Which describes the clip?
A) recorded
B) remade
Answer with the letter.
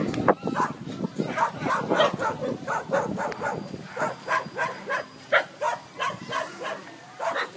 A